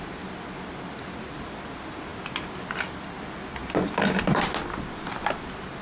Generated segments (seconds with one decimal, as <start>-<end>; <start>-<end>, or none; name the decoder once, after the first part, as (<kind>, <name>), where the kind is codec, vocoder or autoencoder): none